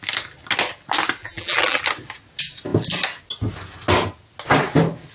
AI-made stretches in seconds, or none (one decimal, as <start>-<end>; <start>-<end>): 1.2-1.8